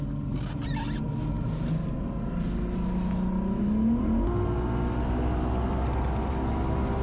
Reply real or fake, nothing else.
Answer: real